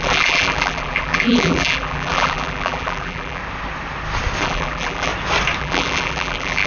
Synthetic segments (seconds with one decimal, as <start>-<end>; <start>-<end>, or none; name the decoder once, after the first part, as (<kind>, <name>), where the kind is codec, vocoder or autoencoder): 0.0-3.4 (vocoder, BigVGAN v2); 4.4-5.1; 5.6-6.7